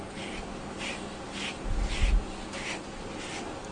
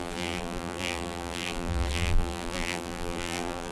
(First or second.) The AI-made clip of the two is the second